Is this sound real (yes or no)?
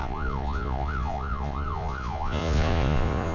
no